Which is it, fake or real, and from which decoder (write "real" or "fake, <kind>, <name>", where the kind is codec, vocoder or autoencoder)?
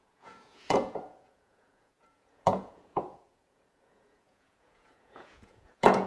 fake, vocoder, Vocos